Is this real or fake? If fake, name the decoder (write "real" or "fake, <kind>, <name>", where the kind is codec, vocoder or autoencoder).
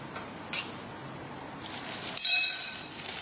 real